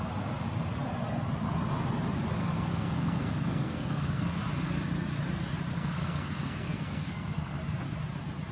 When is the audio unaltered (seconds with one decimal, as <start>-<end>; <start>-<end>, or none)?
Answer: 0.0-2.4; 4.4-5.7; 7.6-8.5